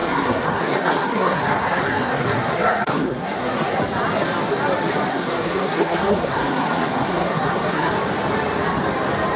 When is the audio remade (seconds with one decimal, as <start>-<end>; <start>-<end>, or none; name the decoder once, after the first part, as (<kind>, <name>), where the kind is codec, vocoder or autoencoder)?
0.0-3.8 (codec, SNAC); 5.1-7.9